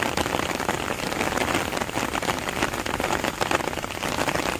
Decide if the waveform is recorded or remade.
remade